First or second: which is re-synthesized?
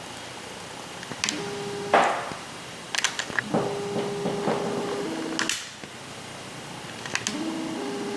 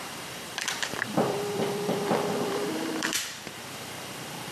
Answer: second